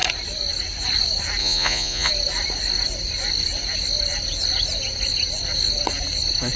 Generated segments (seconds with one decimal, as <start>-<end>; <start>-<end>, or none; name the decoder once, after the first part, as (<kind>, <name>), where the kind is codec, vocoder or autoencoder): 1.4-2.1 (vocoder, Vocos)